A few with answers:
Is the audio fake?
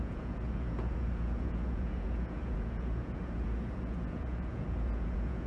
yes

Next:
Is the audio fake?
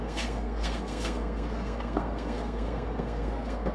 yes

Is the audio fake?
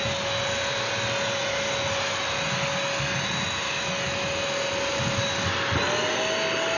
no